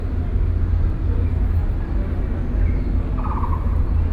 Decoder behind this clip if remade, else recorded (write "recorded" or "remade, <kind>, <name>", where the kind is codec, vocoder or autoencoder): recorded